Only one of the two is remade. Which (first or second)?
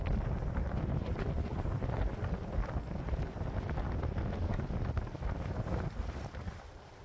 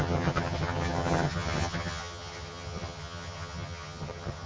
second